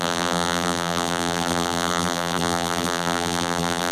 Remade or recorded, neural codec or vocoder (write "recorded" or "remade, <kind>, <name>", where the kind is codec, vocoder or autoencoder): remade, vocoder, BigVGAN v2